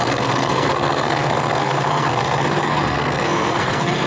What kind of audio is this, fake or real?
fake